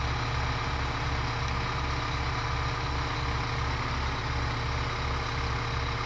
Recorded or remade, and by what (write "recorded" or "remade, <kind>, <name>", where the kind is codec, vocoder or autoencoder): recorded